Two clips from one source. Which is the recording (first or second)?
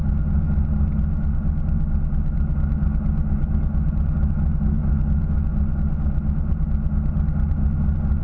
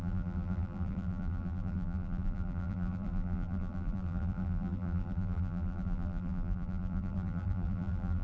first